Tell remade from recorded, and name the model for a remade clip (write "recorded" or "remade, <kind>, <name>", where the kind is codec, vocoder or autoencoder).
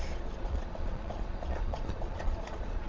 remade, vocoder, Vocos